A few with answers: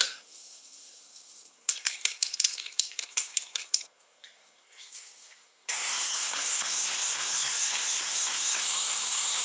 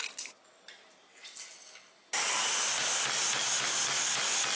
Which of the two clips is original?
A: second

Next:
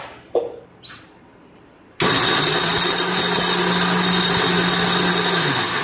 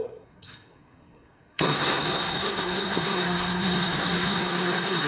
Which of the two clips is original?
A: first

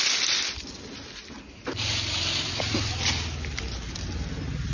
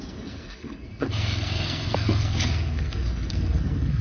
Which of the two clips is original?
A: first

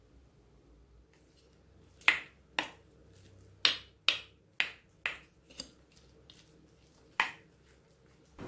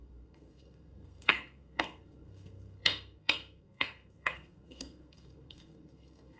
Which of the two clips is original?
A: first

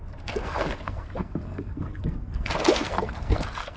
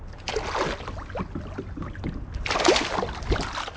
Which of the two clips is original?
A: second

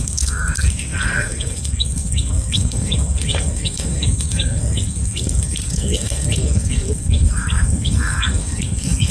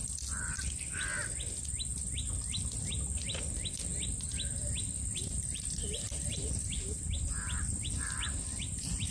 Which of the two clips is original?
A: second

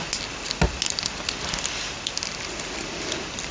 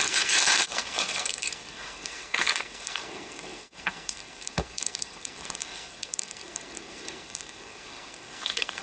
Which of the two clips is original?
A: first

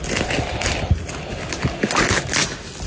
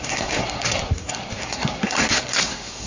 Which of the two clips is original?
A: first